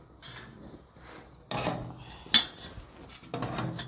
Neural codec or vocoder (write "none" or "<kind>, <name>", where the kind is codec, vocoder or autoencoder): none